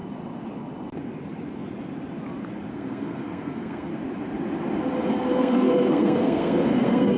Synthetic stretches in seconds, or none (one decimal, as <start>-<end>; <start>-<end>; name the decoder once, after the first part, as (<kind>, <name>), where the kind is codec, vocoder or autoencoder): 2.7-3.9 (codec, SNAC); 5.3-7.2